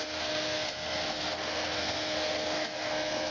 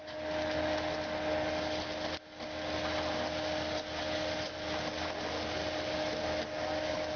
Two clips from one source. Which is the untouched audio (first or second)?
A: second